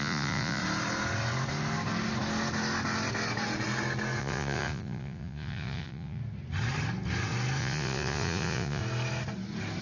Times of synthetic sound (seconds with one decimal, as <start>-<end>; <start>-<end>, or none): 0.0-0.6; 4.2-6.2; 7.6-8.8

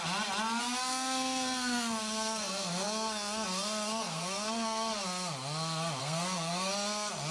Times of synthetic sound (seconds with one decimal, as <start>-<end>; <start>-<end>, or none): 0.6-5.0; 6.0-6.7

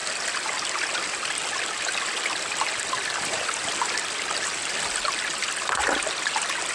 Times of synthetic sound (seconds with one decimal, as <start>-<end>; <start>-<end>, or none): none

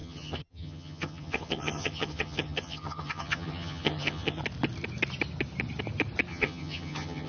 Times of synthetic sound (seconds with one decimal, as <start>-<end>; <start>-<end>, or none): 0.0-4.4; 6.3-7.3

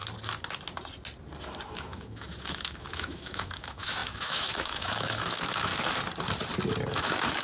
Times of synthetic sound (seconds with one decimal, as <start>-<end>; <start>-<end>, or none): 1.7-5.7; 6.9-7.4

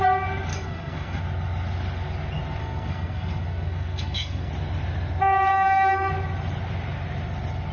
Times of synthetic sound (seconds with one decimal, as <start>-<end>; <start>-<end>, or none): 0.5-1.2; 2.6-4.5; 5.5-6.1

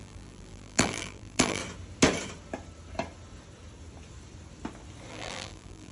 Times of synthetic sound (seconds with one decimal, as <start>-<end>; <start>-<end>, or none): 0.0-1.6; 5.1-5.9

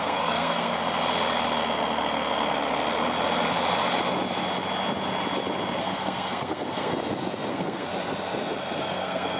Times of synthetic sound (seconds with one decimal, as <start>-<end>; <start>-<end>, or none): 0.0-0.7; 5.8-6.9; 7.5-7.9; 8.8-9.4